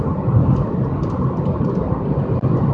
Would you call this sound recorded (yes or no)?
yes